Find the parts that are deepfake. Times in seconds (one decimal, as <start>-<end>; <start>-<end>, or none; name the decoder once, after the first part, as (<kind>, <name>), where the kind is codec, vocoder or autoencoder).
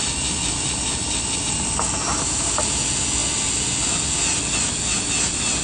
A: 2.1-2.8 (vocoder, BigVGAN v2)